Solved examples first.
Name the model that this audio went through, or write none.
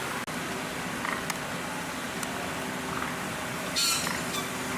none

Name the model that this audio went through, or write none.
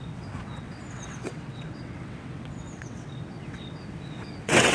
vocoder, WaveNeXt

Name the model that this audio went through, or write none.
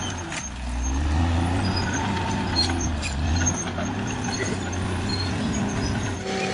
none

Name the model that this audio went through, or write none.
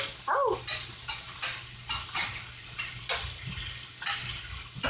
none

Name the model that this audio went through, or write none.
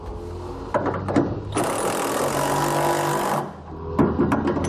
none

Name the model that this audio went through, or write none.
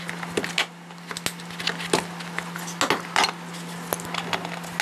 none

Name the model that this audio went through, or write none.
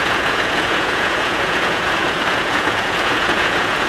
vocoder, Vocos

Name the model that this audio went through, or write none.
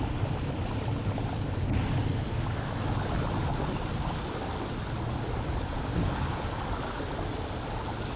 none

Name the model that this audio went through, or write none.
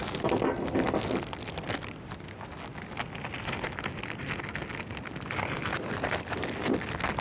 none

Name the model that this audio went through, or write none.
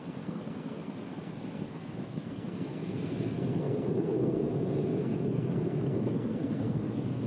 codec, SNAC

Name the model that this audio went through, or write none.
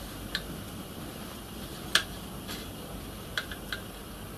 none